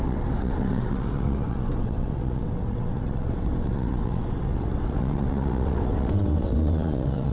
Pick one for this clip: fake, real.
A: fake